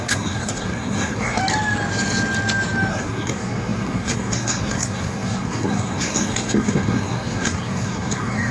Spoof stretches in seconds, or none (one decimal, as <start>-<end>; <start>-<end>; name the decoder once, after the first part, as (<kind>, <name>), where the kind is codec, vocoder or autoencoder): 0.0-1.4 (codec, SNAC); 2.9-8.5